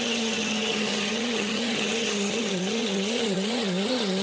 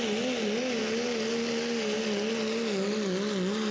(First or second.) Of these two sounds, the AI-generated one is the first